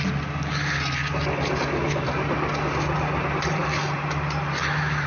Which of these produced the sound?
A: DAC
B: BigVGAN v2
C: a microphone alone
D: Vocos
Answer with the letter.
C